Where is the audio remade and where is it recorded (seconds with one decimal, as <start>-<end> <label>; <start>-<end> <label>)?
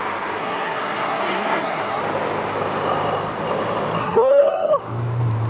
0.0-0.4 recorded; 0.4-2.0 remade; 2.0-4.0 recorded; 4.0-4.7 remade; 4.7-5.5 recorded